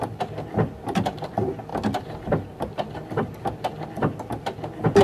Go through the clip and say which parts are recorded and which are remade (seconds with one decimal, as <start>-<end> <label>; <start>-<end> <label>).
0.0-5.0 recorded